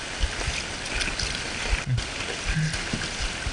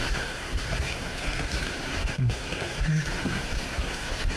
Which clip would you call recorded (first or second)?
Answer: first